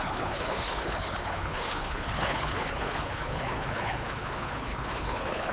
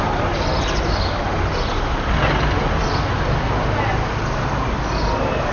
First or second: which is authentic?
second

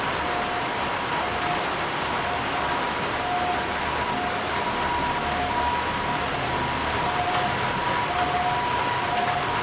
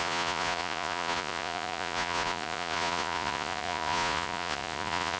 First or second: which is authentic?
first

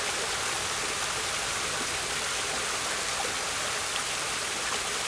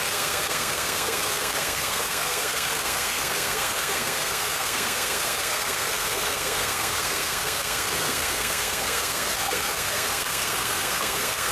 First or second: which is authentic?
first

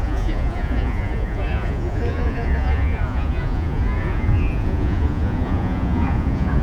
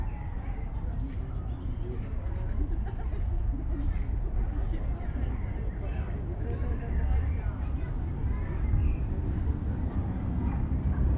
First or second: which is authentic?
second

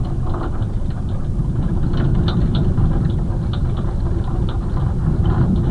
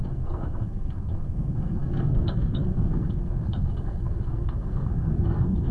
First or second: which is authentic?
first